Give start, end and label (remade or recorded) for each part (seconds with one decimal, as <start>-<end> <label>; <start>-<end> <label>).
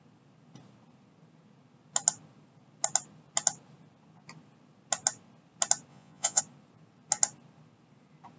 0.0-5.9 recorded; 5.9-6.4 remade; 6.4-8.4 recorded